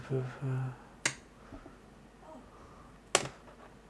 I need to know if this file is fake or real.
real